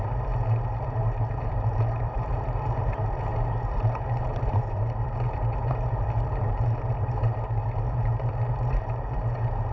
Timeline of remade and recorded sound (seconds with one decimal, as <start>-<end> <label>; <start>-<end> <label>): 0.0-9.7 remade

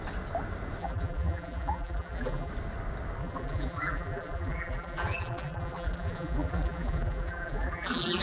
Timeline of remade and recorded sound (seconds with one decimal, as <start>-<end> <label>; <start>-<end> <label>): 0.0-0.8 recorded; 0.8-2.5 remade; 2.5-3.2 recorded; 3.2-8.2 remade

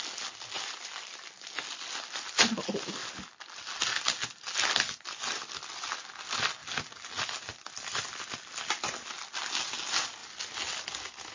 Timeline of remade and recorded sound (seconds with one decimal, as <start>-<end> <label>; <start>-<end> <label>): 0.0-11.3 recorded

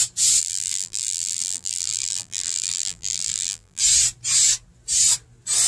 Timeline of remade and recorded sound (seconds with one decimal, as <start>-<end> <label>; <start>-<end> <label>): 0.0-0.4 recorded; 0.4-3.8 remade; 3.8-5.7 recorded

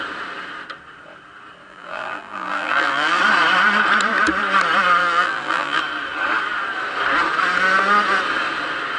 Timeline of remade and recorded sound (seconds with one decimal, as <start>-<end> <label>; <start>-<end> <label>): 0.0-1.7 recorded; 1.7-3.2 remade; 3.2-5.0 recorded; 5.0-5.8 remade; 5.8-9.0 recorded

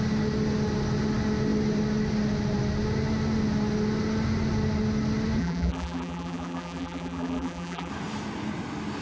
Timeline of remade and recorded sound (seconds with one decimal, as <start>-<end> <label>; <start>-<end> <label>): 0.0-5.4 recorded; 5.4-7.9 remade; 7.9-9.0 recorded

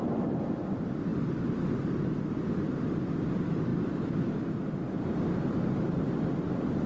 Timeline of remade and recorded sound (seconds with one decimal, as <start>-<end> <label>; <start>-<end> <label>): 0.0-6.9 recorded